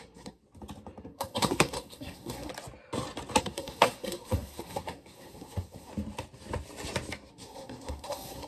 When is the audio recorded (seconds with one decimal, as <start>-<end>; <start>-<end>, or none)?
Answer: 0.4-1.0; 2.5-3.4; 5.9-7.3